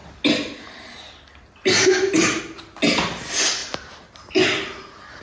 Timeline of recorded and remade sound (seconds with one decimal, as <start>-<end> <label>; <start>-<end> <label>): 0.0-5.2 recorded